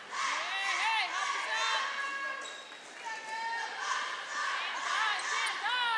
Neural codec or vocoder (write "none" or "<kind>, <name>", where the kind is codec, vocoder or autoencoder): none